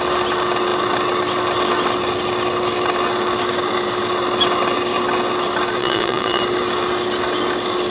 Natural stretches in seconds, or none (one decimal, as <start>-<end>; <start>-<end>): 0.0-5.8; 6.4-7.9